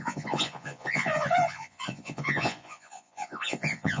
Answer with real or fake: fake